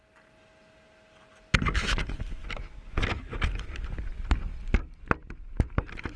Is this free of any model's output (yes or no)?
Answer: yes